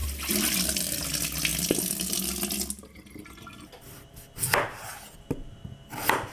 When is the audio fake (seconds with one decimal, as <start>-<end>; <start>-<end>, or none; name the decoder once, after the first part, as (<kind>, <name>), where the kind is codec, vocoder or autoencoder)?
none